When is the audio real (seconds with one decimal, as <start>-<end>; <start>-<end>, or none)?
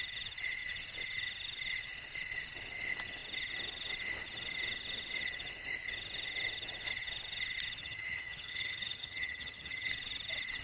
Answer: 0.0-7.8; 9.9-10.6